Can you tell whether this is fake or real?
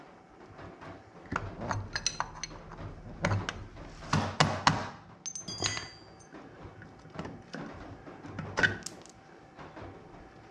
real